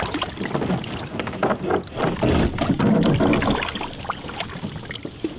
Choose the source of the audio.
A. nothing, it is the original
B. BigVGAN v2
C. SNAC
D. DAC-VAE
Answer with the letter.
A